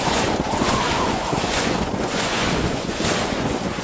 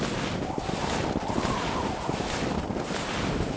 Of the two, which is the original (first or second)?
second